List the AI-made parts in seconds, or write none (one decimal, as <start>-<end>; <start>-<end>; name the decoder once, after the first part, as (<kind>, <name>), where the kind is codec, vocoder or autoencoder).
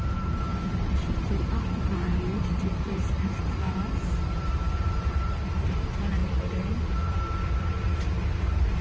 0.0-6.2 (vocoder, BigVGAN v2); 6.9-8.8